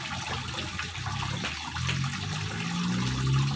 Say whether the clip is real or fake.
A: real